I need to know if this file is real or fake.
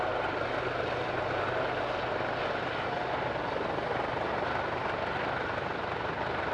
real